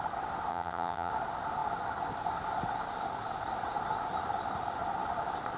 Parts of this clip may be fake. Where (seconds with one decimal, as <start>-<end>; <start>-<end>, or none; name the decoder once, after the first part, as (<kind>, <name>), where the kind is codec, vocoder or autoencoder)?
0.5-1.1 (vocoder, HiFi-GAN)